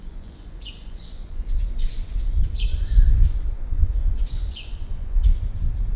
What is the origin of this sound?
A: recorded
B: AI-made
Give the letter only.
B